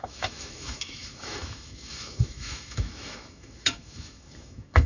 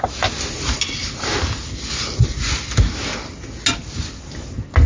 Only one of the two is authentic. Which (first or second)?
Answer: second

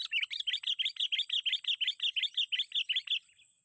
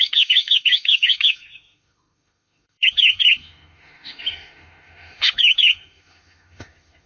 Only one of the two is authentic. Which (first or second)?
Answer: first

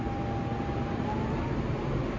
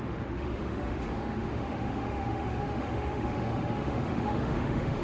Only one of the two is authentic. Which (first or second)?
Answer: first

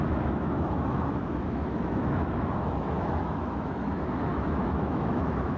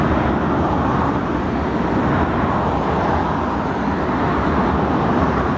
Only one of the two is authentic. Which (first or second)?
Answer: second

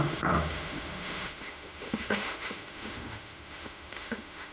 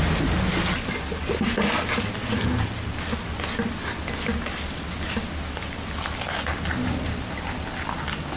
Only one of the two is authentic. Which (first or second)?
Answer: second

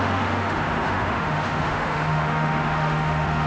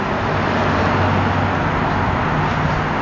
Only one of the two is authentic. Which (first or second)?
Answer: second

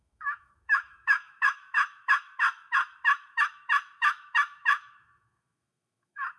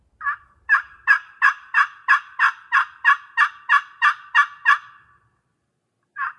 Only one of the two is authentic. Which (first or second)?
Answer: second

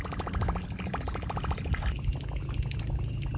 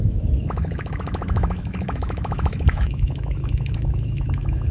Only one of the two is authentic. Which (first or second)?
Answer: first